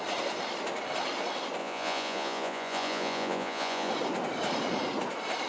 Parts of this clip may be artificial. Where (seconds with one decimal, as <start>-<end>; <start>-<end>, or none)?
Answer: 1.6-3.9